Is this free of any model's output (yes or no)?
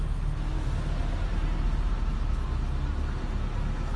yes